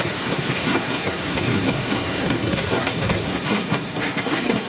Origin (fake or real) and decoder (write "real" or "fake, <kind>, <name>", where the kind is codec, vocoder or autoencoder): fake, codec, SNAC